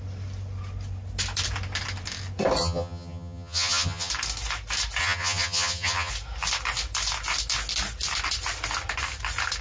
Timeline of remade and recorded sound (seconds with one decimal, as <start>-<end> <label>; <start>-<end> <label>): 0.0-2.6 recorded; 2.6-4.1 remade; 4.1-5.0 recorded; 5.0-6.1 remade; 6.1-9.6 recorded

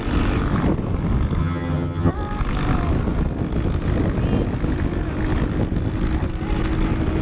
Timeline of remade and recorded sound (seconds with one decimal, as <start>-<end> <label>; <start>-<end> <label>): 0.0-1.4 recorded; 1.4-2.1 remade; 2.1-7.2 recorded

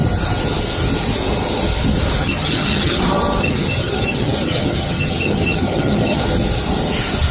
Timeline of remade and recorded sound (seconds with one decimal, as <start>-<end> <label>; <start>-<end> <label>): 0.0-2.2 recorded; 2.2-3.0 remade; 3.0-3.4 recorded; 3.4-6.2 remade; 6.2-7.3 recorded

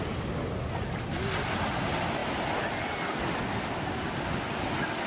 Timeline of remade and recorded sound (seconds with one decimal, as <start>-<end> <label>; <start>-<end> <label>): 0.0-5.1 recorded

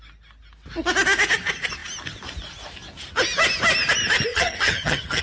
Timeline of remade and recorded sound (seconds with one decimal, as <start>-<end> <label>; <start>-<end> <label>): 0.0-4.3 recorded; 4.3-5.2 remade

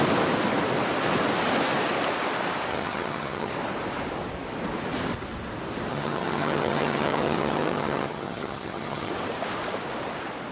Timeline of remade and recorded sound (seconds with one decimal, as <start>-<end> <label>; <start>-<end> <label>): 0.0-2.7 recorded; 2.7-3.5 remade; 3.5-5.9 recorded; 5.9-9.1 remade; 9.1-10.5 recorded

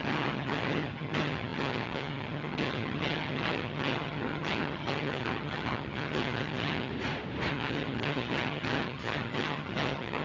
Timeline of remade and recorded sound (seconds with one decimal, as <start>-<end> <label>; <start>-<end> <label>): 0.0-6.9 remade; 6.9-7.5 recorded; 7.5-10.2 remade

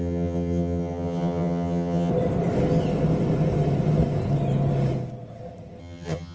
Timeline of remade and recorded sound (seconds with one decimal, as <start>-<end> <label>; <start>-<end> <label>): 0.0-2.1 remade; 2.1-5.8 recorded; 5.8-6.3 remade